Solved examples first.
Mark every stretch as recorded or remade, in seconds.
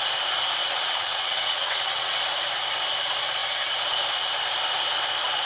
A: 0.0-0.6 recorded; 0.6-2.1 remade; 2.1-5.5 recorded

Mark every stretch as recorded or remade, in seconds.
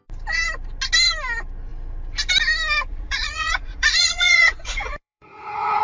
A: 0.0-2.9 recorded; 2.9-5.8 remade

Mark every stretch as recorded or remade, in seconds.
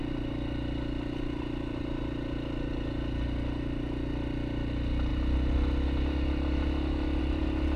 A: 0.0-7.8 recorded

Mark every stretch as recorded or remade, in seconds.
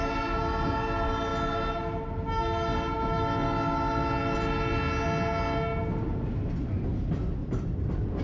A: 0.0-7.4 recorded; 7.4-8.2 remade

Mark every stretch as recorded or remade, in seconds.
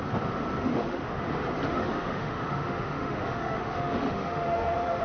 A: 0.0-0.6 recorded; 0.6-1.2 remade; 1.2-1.7 recorded; 1.7-5.0 remade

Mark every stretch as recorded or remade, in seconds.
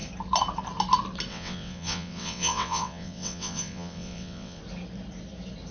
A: 0.0-1.3 recorded; 1.3-4.6 remade; 4.6-5.7 recorded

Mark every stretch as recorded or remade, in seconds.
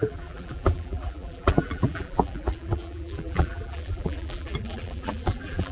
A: 0.0-5.7 remade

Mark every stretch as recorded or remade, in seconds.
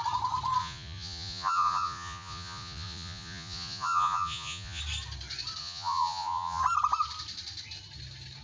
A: 0.0-0.6 recorded; 0.6-4.8 remade; 4.8-5.6 recorded; 5.6-6.6 remade; 6.6-8.4 recorded